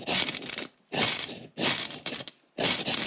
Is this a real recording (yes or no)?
yes